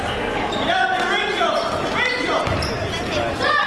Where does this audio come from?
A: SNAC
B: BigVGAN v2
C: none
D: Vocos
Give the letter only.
C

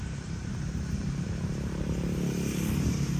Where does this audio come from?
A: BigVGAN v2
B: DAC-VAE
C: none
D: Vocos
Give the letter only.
A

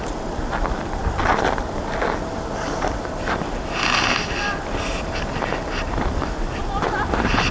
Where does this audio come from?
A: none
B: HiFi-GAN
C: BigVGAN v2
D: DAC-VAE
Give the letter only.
A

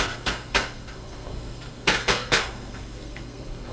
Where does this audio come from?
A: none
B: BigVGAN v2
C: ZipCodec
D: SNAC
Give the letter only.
D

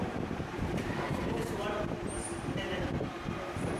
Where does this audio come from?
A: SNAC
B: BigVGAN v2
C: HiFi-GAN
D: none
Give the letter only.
B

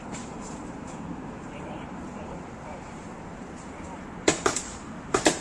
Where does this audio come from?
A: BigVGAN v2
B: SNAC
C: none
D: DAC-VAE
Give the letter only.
A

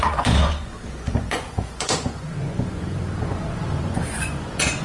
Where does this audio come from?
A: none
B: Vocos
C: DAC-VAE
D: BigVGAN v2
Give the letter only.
B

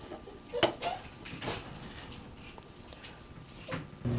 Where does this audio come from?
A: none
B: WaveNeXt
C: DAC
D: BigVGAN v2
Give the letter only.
A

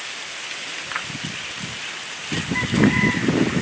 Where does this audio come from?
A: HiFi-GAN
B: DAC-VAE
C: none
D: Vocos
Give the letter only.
C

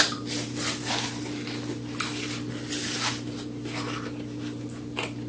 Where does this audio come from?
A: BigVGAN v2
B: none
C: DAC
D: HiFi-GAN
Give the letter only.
B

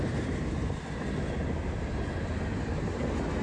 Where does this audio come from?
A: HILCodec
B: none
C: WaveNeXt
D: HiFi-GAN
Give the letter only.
B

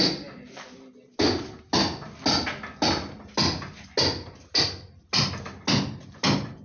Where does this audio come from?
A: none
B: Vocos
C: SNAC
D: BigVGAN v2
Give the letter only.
A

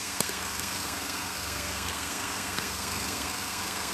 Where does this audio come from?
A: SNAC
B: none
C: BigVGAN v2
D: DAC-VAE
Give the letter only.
A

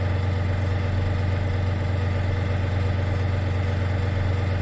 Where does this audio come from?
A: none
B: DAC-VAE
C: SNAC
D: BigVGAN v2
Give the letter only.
A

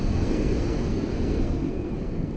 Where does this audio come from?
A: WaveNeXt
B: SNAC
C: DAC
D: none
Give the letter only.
B